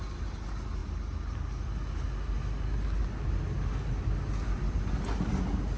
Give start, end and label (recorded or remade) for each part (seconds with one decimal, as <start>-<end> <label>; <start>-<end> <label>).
0.0-5.8 recorded